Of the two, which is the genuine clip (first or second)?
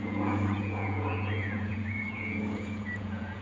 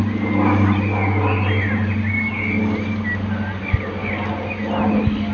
second